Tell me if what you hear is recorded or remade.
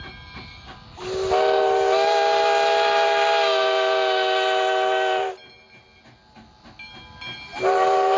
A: recorded